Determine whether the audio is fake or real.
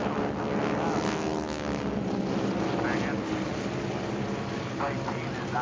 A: real